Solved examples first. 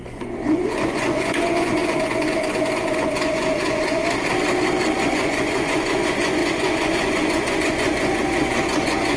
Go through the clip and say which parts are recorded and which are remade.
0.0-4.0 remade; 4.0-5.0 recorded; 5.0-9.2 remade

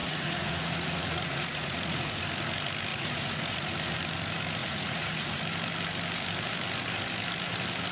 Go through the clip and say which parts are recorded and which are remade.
0.0-2.2 remade; 2.2-2.9 recorded; 2.9-3.7 remade; 3.7-4.6 recorded; 4.6-5.4 remade; 5.4-7.9 recorded